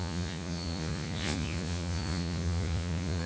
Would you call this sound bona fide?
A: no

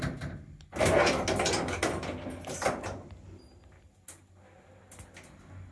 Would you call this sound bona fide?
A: yes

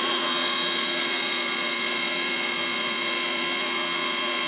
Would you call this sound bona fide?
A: no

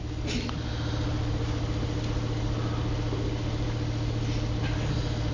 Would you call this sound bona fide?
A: yes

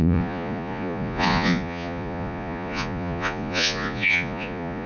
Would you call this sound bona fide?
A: no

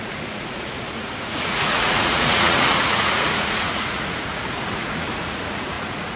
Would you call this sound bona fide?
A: no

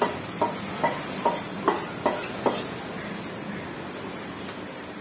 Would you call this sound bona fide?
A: yes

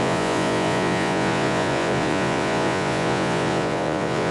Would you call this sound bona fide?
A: no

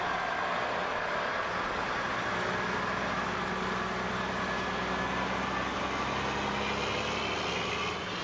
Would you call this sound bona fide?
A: yes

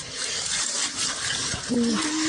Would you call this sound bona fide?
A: yes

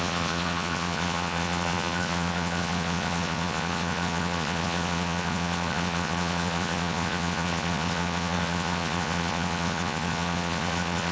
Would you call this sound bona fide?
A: no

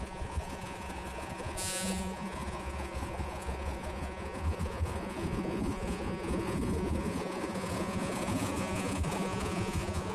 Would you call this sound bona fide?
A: no